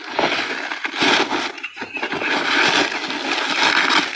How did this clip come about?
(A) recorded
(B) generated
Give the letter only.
A